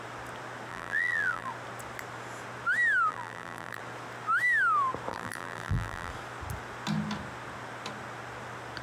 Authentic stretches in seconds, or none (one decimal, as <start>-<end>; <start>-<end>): 0.0-0.7; 1.5-3.1; 3.8-5.1; 6.1-8.8